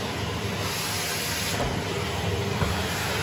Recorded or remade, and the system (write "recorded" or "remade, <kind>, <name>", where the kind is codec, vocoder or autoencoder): recorded